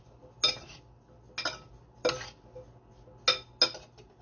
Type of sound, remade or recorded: recorded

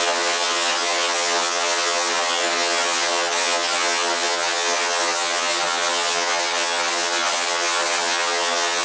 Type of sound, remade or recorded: remade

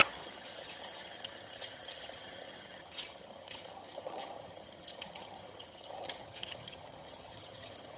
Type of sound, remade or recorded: remade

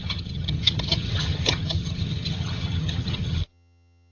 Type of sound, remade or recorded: remade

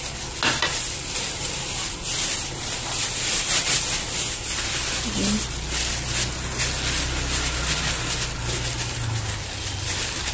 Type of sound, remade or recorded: recorded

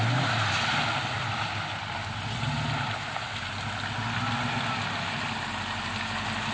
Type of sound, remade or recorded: recorded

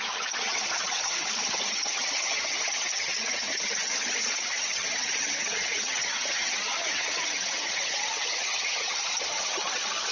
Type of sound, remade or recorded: remade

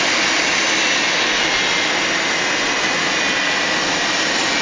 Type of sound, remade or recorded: recorded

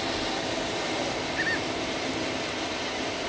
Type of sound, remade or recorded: recorded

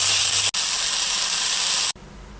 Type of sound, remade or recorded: recorded